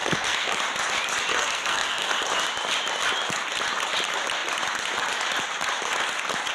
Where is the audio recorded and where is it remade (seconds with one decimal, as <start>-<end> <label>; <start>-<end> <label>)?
0.0-0.6 remade; 0.6-1.3 recorded; 1.3-2.2 remade; 2.2-6.5 recorded